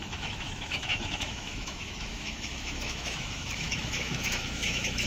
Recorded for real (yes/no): no